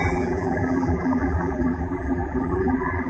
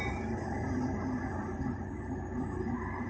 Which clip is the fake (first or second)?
first